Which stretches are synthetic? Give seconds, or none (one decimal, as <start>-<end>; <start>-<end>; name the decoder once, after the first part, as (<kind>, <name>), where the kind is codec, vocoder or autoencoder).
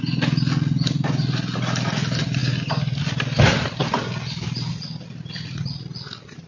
none